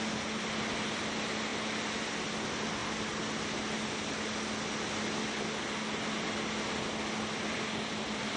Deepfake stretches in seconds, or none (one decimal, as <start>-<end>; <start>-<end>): 1.5-2.1; 2.8-4.4